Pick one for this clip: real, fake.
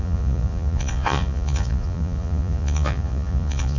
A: fake